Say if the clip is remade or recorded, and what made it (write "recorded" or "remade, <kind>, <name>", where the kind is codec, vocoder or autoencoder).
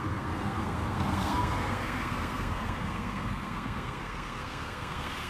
remade, codec, SNAC